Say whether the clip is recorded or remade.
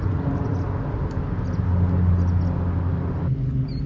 recorded